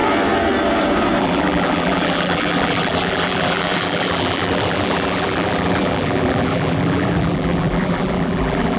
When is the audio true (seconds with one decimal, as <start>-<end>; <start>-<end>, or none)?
0.0-1.2

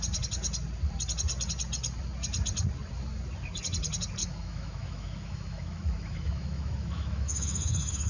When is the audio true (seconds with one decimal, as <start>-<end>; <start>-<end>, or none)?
0.0-4.2

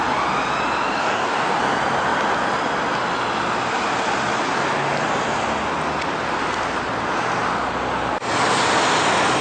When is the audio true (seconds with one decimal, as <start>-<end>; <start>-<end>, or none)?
0.0-1.0; 1.6-9.4

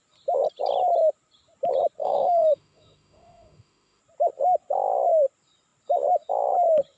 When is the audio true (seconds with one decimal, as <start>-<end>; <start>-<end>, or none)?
0.0-2.0; 4.0-7.0